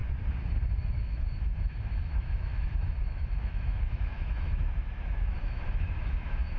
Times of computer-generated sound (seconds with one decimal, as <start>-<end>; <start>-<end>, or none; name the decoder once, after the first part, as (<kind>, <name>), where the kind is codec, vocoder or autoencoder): 0.8-6.6 (autoencoder, DAC-VAE)